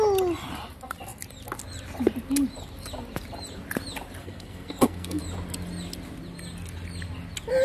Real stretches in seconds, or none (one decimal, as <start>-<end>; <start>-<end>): 0.0-4.2; 5.2-7.6